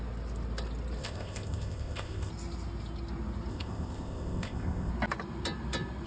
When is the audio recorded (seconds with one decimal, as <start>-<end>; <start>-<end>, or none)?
0.0-1.0; 2.3-3.5; 4.9-6.1